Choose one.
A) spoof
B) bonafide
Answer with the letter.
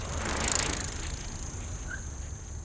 B